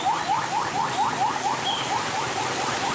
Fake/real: real